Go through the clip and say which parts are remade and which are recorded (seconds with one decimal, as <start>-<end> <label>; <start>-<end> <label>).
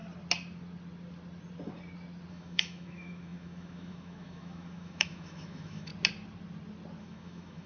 0.0-2.3 recorded; 2.3-5.9 remade; 5.9-7.0 recorded; 7.0-7.7 remade